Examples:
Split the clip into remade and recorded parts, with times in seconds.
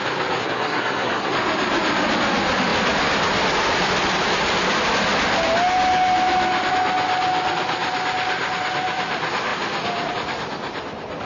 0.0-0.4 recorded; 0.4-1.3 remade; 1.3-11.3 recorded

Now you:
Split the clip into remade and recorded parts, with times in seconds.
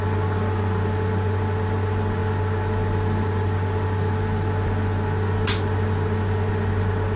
0.0-7.2 recorded